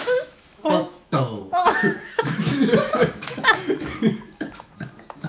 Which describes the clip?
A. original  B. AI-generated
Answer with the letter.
B